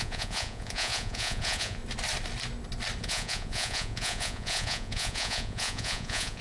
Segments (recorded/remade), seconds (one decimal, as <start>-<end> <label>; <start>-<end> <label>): 0.0-1.8 remade; 1.8-3.0 recorded; 3.0-6.4 remade